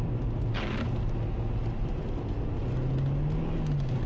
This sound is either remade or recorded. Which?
recorded